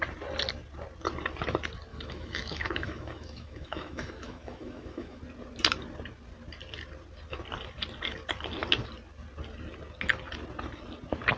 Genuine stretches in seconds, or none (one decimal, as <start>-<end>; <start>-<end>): 0.0-1.9; 5.2-11.4